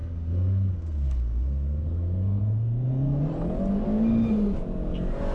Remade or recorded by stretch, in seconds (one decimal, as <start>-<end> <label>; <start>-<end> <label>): 0.0-3.2 remade; 3.2-5.3 recorded

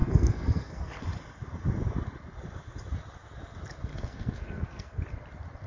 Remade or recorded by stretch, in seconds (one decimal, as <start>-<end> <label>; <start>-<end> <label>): 0.0-1.0 remade; 1.0-3.9 recorded; 3.9-5.0 remade; 5.0-5.7 recorded